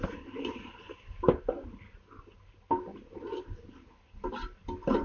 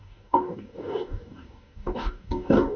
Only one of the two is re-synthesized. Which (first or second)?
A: second